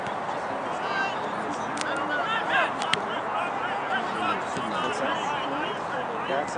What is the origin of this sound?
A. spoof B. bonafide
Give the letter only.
B